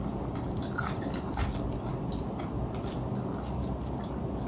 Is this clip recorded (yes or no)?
yes